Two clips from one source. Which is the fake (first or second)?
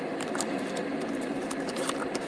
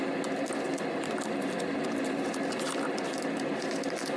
first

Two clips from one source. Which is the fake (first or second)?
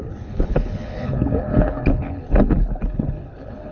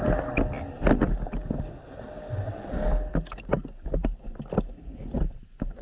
first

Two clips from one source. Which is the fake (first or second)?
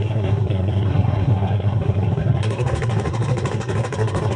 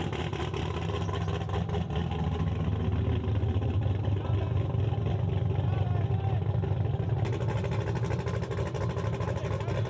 first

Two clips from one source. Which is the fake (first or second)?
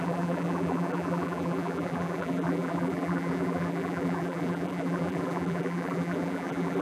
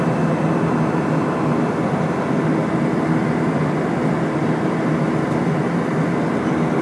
first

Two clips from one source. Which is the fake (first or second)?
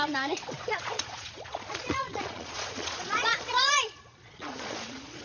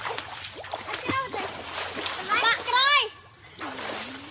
first